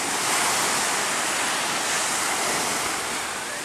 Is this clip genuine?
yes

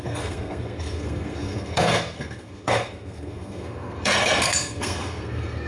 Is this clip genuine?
no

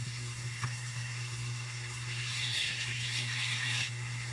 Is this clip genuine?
no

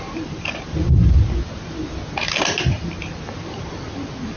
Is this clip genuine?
yes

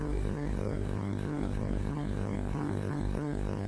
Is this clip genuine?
no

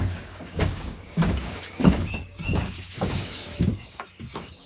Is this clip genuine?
no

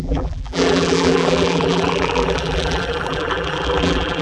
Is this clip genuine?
no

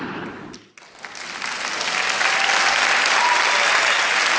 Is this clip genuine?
yes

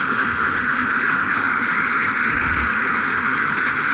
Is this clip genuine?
no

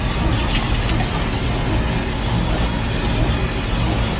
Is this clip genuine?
yes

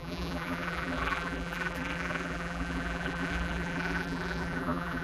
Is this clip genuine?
no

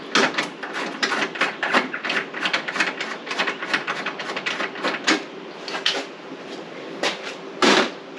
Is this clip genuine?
yes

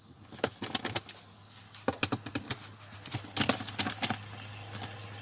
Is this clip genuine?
yes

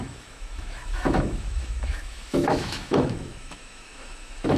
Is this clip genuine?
no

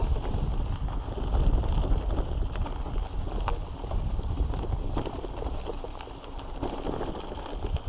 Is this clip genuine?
yes